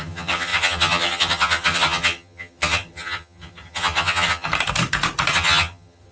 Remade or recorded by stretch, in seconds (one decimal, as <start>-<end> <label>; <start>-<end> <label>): 0.0-4.5 remade; 4.5-5.3 recorded; 5.3-6.1 remade